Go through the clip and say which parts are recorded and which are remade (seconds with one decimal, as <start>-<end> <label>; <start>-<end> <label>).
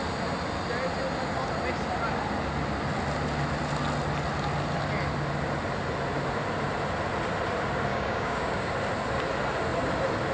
0.0-7.9 recorded; 7.9-8.7 remade; 8.7-10.3 recorded